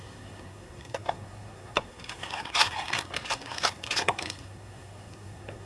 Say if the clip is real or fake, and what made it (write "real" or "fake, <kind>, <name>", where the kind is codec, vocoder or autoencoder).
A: fake, codec, SNAC